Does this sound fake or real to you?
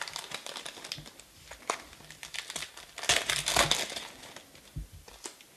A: real